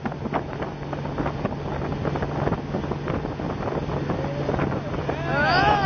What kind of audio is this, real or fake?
real